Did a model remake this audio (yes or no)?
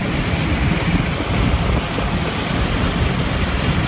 no